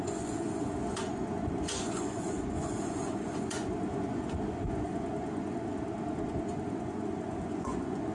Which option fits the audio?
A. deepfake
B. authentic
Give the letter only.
A